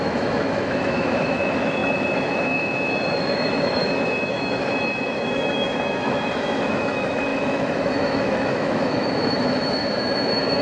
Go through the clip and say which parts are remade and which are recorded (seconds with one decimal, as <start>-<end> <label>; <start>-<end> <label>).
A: 0.0-10.6 remade